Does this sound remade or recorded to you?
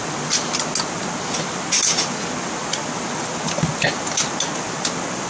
recorded